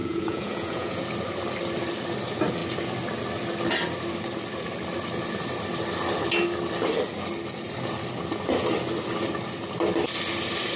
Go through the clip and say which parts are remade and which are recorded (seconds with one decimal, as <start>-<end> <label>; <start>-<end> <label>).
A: 0.0-1.0 remade; 1.0-10.8 recorded